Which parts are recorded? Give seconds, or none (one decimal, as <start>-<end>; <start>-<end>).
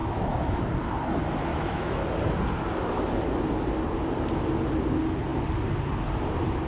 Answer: 0.6-1.5; 2.0-6.7